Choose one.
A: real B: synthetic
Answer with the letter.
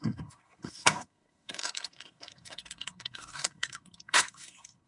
B